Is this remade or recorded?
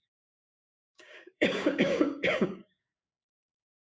remade